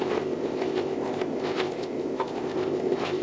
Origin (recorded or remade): remade